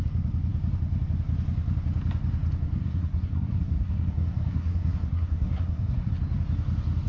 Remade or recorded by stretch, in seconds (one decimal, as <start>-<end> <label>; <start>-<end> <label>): 0.0-2.8 recorded; 2.8-6.1 remade; 6.1-7.1 recorded